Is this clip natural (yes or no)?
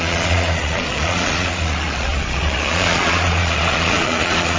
no